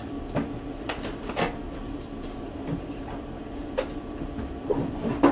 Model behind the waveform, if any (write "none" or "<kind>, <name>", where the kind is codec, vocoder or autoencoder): none